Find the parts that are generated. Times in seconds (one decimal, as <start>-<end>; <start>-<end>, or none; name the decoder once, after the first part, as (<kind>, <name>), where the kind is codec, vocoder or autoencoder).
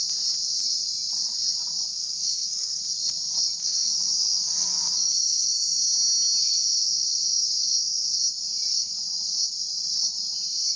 1.9-2.8 (codec, SNAC); 3.6-5.8; 6.4-8.2